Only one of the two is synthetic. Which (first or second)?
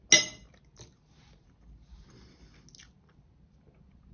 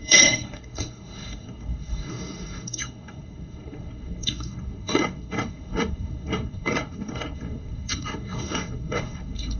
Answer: second